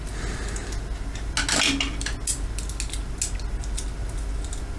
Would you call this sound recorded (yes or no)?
yes